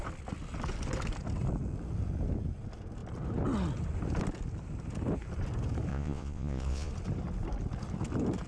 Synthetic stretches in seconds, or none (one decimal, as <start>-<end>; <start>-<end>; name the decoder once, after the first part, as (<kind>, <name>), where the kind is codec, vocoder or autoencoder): 5.9-6.9 (vocoder, Vocos)